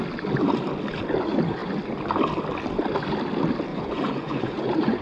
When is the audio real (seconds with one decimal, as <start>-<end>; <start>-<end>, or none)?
0.0-3.7